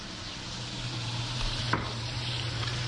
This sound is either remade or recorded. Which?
remade